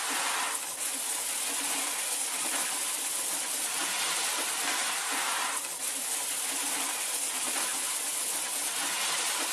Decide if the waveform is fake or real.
real